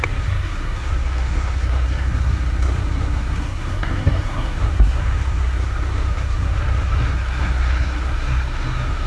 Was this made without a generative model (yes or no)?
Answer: no